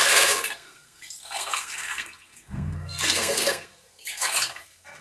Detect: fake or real fake